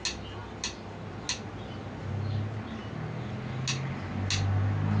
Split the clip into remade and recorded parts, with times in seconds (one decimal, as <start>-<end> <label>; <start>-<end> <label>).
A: 0.0-5.0 recorded

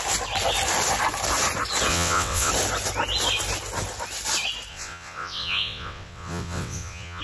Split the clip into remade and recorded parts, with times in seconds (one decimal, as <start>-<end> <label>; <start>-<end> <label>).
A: 0.0-1.9 recorded; 1.9-2.5 remade; 2.5-4.7 recorded; 4.7-7.2 remade

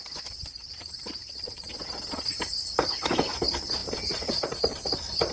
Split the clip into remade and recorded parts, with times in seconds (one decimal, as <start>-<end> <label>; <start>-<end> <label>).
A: 0.0-1.2 recorded; 1.2-1.8 remade; 1.8-5.3 recorded

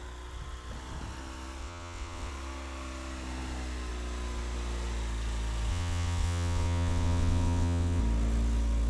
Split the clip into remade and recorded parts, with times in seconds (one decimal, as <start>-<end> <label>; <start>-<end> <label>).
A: 0.0-1.6 recorded; 1.6-2.3 remade; 2.3-5.7 recorded; 5.7-8.0 remade; 8.0-8.9 recorded

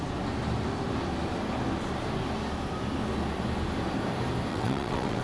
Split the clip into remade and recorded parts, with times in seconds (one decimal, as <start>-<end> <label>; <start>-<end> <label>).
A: 0.0-4.5 recorded; 4.5-5.2 remade